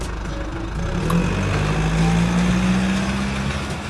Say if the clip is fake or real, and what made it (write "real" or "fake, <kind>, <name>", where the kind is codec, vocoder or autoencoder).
real